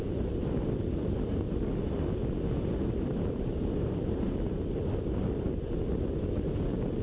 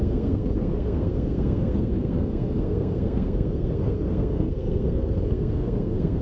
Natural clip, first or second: first